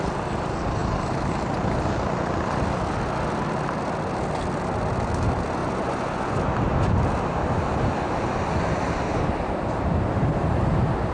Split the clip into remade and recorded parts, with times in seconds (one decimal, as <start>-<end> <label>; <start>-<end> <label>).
0.0-5.6 recorded; 5.6-6.4 remade; 6.4-11.1 recorded